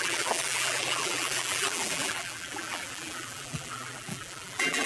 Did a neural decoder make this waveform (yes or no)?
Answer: yes